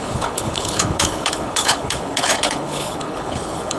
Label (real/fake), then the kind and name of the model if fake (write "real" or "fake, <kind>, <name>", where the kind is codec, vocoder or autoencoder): fake, codec, HILCodec